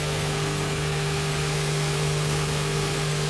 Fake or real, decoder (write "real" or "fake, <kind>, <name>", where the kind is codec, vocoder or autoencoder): fake, codec, SNAC